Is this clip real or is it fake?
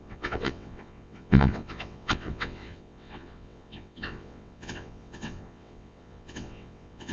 fake